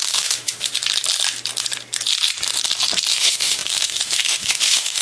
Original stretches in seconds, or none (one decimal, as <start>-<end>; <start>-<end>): 0.7-3.1